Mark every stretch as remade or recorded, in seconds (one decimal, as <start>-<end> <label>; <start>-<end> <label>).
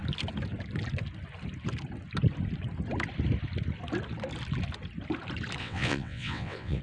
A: 0.0-5.6 recorded; 5.6-6.8 remade